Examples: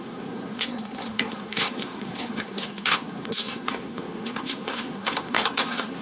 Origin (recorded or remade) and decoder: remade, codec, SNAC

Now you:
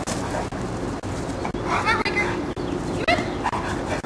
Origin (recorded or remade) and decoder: recorded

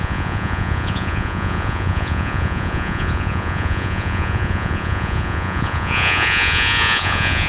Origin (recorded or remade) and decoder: remade, vocoder, Vocos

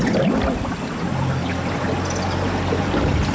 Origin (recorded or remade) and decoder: recorded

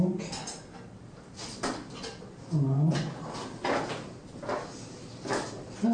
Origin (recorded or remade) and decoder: recorded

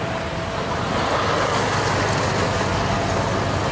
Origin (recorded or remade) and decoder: recorded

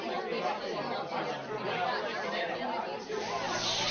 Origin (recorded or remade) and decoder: remade, vocoder, BigVGAN v2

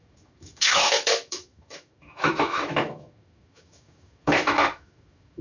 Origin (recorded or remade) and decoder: remade, autoencoder, DAC-VAE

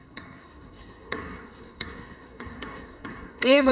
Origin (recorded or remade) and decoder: remade, codec, SNAC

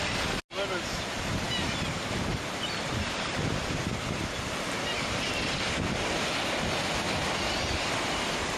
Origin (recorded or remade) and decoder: recorded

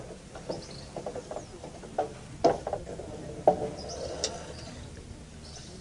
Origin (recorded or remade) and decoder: recorded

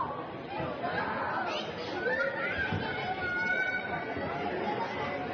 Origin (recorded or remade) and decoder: recorded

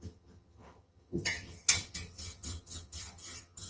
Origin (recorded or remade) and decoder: remade, vocoder, HiFi-GAN